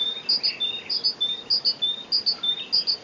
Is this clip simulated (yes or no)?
no